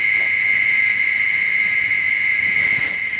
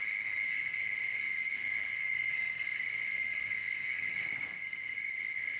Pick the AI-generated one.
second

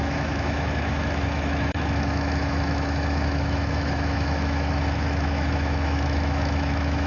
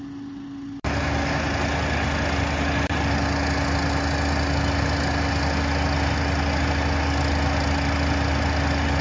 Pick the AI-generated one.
first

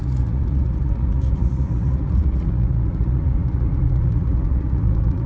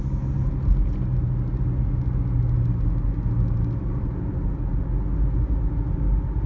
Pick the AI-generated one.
first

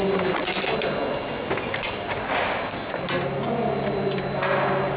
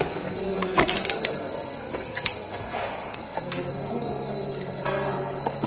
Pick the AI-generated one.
second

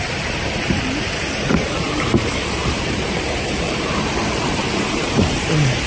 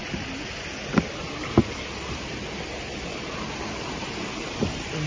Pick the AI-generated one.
first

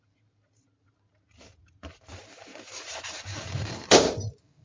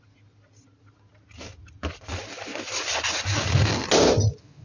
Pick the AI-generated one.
first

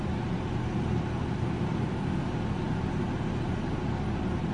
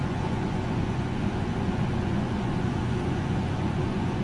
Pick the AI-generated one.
second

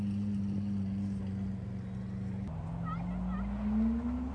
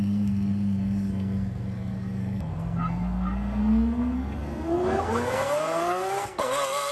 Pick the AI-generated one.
second